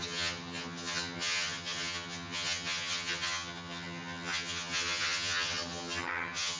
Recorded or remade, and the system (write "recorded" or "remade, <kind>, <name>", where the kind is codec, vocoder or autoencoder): remade, vocoder, HiFi-GAN